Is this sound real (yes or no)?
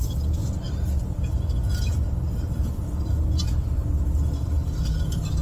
yes